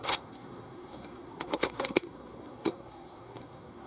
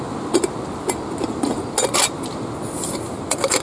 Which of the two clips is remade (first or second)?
first